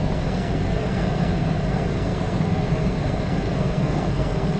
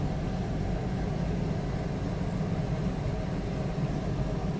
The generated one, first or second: first